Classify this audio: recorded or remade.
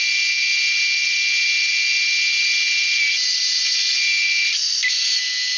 recorded